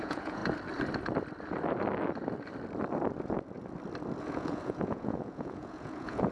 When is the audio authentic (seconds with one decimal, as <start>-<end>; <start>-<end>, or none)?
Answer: 0.4-4.2